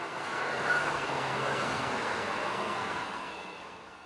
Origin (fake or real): fake